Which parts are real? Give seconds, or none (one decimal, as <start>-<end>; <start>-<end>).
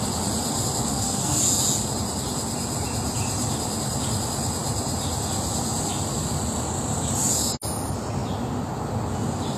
0.0-0.9; 1.4-9.6